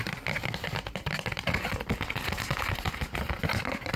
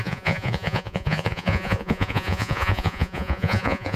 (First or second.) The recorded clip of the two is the first